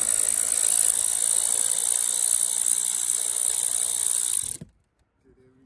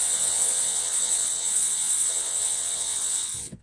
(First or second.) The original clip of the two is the first